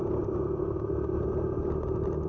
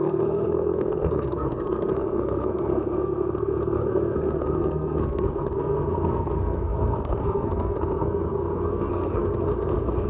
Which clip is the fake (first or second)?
second